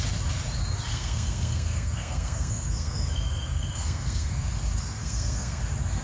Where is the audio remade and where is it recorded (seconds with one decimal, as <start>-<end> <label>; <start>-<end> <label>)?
0.0-0.9 recorded; 0.9-4.5 remade; 4.5-5.0 recorded; 5.0-5.6 remade; 5.6-6.0 recorded